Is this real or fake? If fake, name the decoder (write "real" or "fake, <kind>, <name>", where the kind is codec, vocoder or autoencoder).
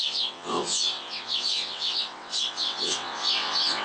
fake, vocoder, WaveNeXt